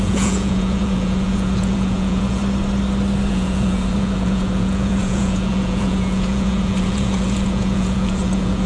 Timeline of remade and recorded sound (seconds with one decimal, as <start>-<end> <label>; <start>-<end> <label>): 0.0-2.4 remade; 2.4-3.3 recorded; 3.3-8.7 remade